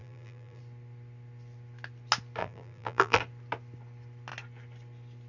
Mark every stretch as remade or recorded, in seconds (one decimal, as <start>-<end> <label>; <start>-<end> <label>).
0.0-0.6 remade; 0.6-2.4 recorded; 2.4-3.2 remade; 3.2-5.3 recorded